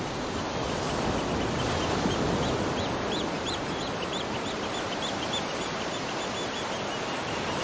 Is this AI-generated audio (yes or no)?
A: no